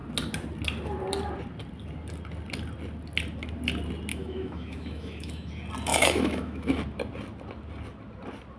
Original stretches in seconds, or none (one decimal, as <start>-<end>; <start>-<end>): 0.0-4.1; 5.5-5.9; 6.8-8.6